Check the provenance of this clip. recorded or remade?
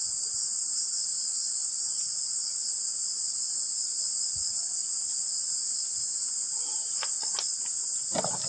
recorded